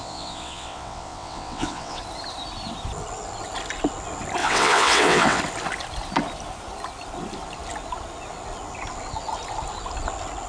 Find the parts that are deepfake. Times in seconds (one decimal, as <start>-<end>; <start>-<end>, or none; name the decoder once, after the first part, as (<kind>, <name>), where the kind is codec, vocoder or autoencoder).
0.0-2.0 (vocoder, WaveNeXt); 4.4-5.4